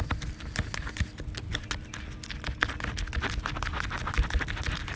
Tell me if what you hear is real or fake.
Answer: real